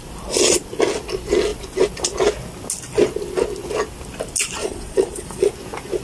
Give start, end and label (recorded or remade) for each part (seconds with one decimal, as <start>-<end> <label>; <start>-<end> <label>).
0.0-4.6 recorded; 4.6-5.5 remade; 5.5-6.0 recorded